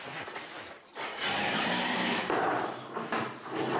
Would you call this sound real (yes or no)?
yes